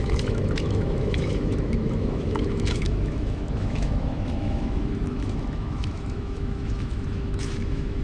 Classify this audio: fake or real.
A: fake